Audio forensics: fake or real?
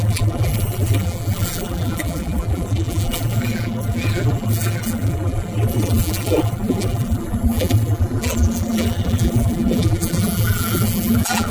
fake